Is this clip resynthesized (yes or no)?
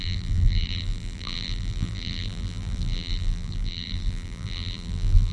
yes